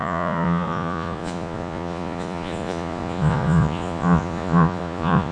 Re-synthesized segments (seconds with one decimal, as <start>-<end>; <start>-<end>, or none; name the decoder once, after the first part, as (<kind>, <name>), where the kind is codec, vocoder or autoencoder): 0.0-5.3 (vocoder, Vocos)